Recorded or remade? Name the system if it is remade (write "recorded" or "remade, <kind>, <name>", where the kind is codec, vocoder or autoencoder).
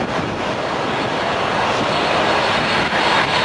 recorded